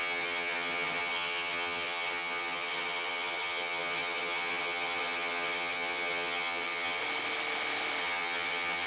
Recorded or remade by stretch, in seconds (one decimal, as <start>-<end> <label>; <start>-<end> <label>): 0.0-7.0 remade; 7.0-8.0 recorded; 8.0-8.9 remade